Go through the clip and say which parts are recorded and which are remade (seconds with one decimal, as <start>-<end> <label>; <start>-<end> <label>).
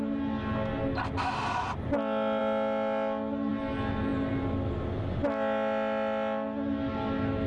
0.0-7.5 recorded